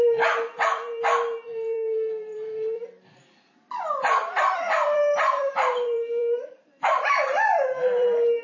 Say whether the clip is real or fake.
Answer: fake